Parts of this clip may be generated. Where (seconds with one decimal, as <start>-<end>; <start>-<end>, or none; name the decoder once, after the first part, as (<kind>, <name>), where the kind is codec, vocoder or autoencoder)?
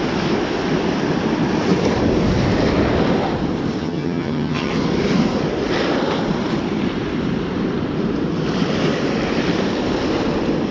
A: 3.8-4.7 (vocoder, HiFi-GAN)